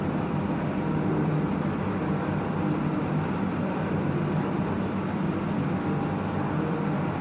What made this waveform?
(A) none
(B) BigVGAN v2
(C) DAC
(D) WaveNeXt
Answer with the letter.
A